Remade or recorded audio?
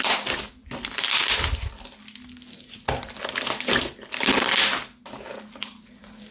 recorded